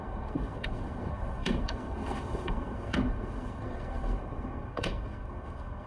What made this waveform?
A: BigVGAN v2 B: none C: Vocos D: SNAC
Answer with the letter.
D